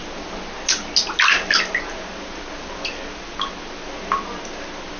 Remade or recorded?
recorded